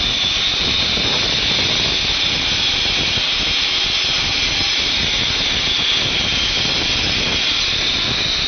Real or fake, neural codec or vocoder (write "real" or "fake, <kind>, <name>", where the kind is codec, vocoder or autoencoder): real